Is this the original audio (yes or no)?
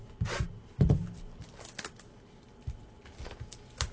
yes